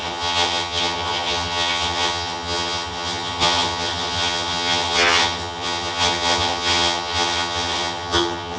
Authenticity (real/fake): fake